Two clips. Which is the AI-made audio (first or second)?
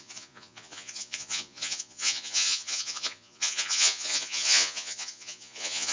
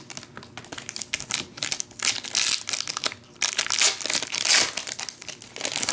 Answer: first